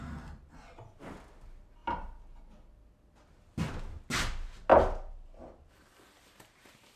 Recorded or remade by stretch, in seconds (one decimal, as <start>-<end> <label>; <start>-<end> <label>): 0.0-7.0 recorded